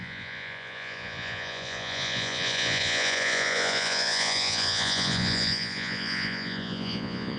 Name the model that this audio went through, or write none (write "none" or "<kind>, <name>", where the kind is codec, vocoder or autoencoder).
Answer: vocoder, Vocos